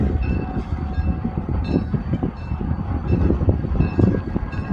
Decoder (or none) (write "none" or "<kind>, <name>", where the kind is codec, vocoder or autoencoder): none